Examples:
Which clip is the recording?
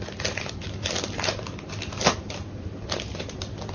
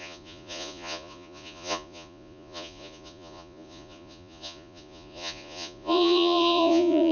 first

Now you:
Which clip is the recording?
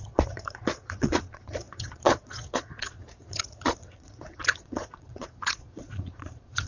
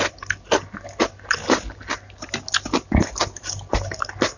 second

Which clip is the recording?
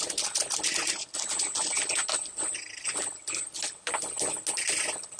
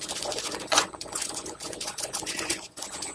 first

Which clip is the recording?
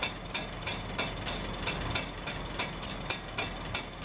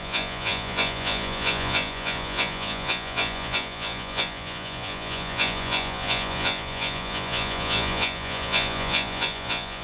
first